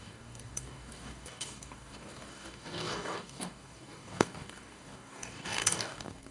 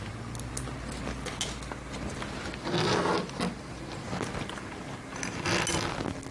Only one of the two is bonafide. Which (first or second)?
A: second